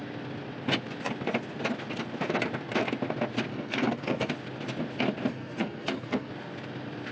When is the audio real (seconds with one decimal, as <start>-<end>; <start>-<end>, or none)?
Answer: 0.0-3.5; 4.3-5.3; 6.3-7.1